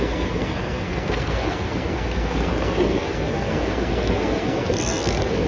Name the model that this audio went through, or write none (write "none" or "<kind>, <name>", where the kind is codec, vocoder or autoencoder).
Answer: codec, SNAC